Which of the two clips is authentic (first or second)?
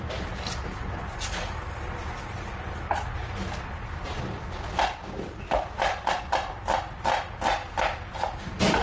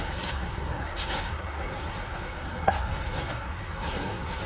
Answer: first